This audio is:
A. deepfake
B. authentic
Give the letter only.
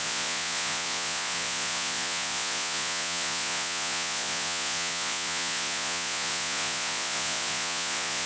A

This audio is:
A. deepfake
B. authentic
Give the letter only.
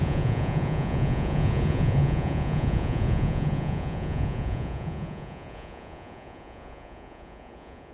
A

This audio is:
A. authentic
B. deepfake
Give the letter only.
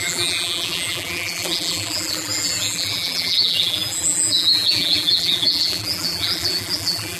B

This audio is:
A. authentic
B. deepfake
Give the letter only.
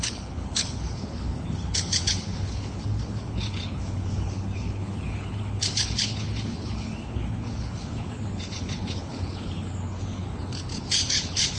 B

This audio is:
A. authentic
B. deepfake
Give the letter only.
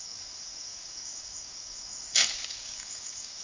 B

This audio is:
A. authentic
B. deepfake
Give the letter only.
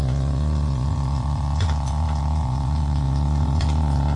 B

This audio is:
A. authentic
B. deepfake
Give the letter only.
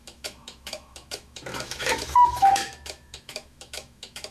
B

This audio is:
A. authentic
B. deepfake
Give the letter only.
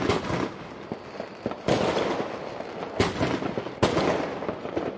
A